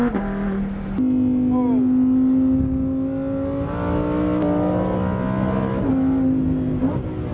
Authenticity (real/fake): real